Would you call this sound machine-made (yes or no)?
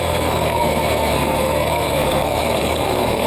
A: yes